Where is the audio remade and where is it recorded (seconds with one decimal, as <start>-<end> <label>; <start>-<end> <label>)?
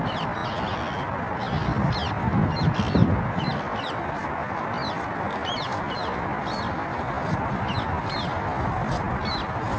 0.0-9.8 recorded